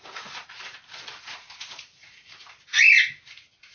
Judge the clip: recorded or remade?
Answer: remade